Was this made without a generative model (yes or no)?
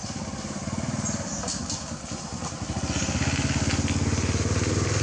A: yes